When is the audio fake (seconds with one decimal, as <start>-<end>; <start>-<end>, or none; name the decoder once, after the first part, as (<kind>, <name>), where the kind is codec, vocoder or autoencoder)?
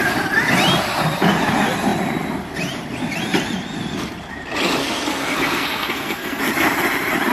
4.8-6.4 (codec, SNAC)